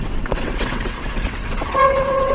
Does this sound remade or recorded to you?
remade